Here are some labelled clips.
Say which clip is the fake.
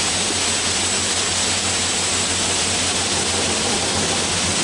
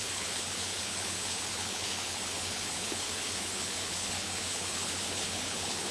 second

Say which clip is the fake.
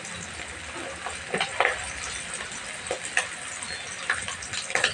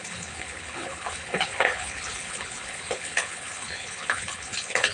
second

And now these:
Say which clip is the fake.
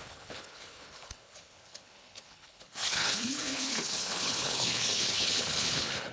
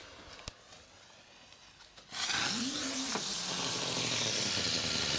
first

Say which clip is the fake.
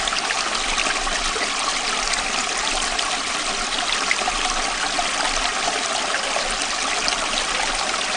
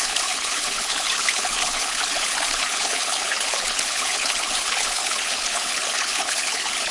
second